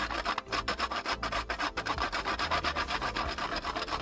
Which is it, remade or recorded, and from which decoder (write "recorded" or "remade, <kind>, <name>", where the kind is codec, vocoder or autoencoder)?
recorded